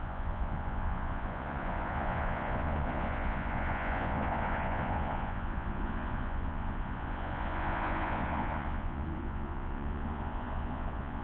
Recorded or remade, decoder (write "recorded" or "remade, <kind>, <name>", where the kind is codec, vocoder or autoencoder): remade, vocoder, Vocos